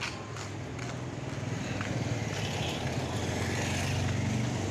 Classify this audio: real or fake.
real